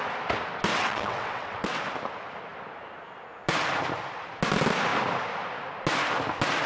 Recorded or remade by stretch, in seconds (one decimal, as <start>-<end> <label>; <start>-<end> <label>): 0.0-0.7 recorded; 0.7-1.8 remade; 1.8-6.7 recorded

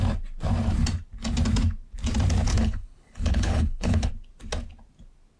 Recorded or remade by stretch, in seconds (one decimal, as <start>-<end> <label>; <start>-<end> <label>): 0.0-2.5 recorded; 2.5-4.1 remade; 4.1-5.4 recorded

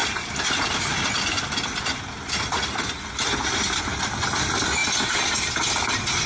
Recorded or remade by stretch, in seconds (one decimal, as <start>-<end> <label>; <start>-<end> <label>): 0.0-6.3 recorded